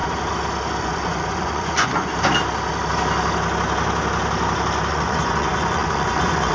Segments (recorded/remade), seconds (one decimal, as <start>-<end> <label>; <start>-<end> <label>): 0.0-0.8 recorded; 0.8-2.1 remade; 2.1-4.9 recorded; 4.9-6.5 remade